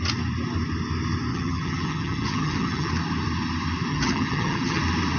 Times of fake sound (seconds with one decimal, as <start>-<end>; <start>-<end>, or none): 1.3-2.9; 3.9-4.8